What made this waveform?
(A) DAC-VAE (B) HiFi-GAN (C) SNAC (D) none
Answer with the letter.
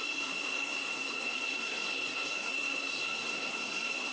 C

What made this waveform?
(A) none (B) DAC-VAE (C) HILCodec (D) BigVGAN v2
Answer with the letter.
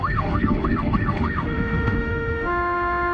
B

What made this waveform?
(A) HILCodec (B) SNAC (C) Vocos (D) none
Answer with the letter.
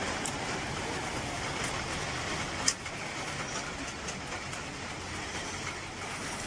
D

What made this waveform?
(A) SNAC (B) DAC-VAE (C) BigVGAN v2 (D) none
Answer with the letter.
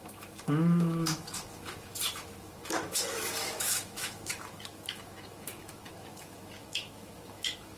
B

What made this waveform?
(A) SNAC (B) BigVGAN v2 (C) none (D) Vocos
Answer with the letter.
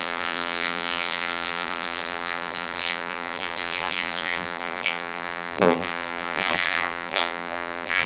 B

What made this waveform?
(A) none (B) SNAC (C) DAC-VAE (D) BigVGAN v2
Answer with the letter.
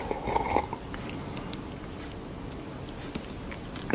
A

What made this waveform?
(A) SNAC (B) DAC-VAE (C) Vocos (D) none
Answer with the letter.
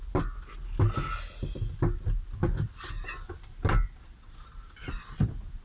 D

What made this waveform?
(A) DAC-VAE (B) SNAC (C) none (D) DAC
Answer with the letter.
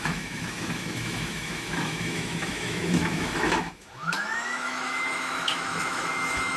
A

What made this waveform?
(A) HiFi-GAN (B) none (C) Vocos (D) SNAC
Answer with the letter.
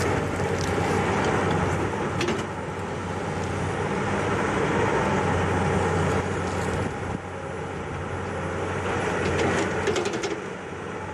B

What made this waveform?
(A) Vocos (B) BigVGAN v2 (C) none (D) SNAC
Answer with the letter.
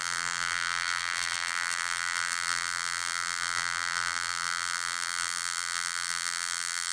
B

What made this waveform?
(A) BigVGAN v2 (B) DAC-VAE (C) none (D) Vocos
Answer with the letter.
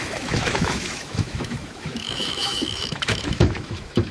B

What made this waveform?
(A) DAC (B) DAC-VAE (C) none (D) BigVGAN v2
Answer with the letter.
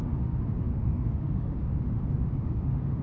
B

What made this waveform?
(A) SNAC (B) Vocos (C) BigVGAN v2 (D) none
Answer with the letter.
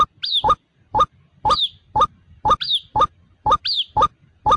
D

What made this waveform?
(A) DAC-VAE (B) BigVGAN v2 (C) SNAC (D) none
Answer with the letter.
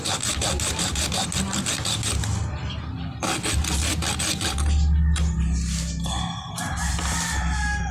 D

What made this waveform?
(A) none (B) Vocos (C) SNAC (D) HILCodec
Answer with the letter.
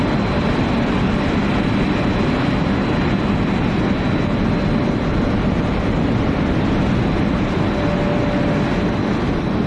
A